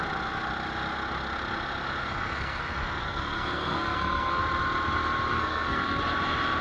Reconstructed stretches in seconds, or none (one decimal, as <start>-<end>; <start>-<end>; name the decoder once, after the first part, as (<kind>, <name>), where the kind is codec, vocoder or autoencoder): 2.0-2.6 (codec, SNAC); 3.0-4.4; 5.3-6.0